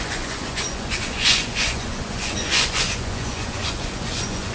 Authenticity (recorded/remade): remade